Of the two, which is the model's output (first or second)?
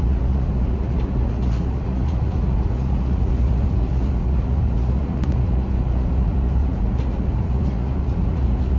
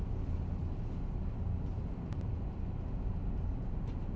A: first